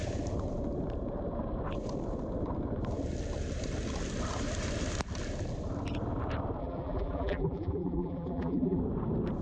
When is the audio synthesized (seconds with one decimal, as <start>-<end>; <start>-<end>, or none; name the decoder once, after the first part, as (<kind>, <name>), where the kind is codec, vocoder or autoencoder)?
6.6-8.8 (vocoder, BigVGAN v2)